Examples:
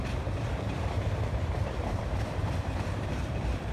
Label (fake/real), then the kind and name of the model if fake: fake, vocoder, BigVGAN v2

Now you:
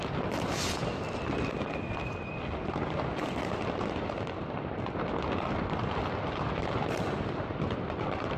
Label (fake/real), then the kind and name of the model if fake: real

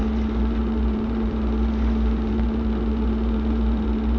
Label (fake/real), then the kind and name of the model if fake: fake, vocoder, BigVGAN v2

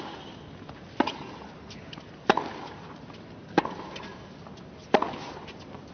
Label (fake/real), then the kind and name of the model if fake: real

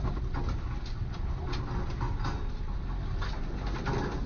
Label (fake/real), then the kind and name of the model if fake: real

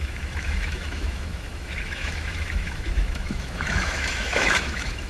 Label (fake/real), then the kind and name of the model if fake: fake, autoencoder, DAC-VAE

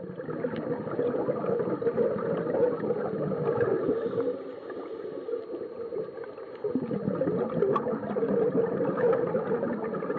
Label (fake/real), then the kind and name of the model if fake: real